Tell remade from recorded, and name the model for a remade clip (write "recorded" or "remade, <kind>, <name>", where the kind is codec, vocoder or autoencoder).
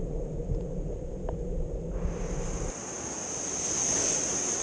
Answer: recorded